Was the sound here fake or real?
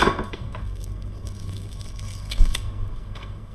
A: fake